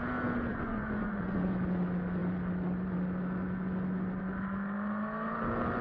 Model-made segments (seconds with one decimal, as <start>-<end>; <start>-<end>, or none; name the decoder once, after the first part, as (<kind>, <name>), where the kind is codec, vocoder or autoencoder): 0.5-1.5 (vocoder, Vocos)